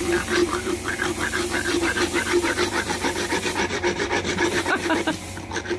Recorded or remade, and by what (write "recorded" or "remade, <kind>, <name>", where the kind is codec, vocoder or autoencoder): remade, vocoder, BigVGAN v2